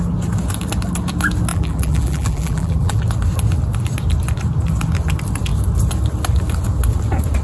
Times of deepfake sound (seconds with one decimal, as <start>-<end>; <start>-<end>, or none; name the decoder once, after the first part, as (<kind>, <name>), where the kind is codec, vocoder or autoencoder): 1.5-3.0 (vocoder, BigVGAN v2)